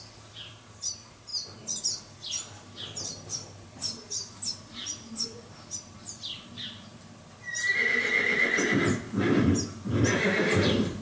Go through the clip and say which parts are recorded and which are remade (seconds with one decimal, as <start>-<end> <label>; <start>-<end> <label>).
0.0-1.3 remade; 1.3-2.0 recorded; 2.0-6.9 remade; 6.9-7.7 recorded; 7.7-11.0 remade